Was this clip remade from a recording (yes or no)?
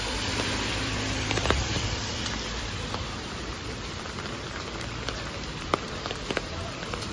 yes